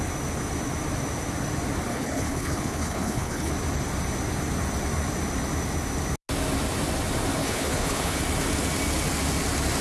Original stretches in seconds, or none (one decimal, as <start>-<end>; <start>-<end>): 0.0-1.9; 3.5-7.4; 8.2-9.8